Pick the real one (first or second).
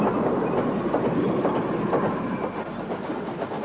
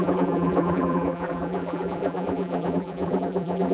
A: first